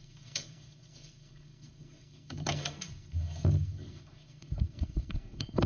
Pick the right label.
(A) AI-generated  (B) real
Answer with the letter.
A